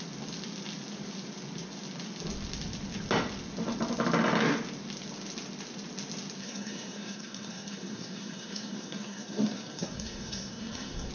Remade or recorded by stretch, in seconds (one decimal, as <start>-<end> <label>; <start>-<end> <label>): 0.0-6.4 recorded; 6.4-11.1 remade